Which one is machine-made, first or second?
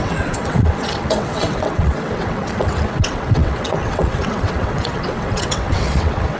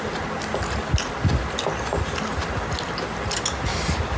first